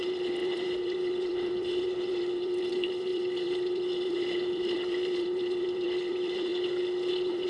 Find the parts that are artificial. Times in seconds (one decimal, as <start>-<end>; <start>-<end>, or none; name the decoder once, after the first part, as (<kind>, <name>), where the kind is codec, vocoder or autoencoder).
0.0-6.5 (vocoder, BigVGAN v2); 7.1-7.5